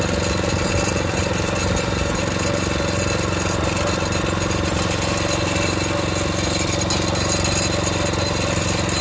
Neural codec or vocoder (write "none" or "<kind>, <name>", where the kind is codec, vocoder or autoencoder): none